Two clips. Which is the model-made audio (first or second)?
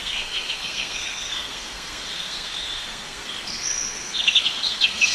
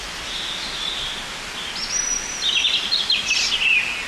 first